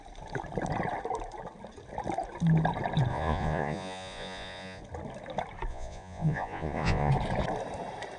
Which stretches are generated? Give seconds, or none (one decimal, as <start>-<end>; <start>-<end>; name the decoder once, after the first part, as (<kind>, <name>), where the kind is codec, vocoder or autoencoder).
3.1-4.8 (vocoder, Vocos); 5.7-7.1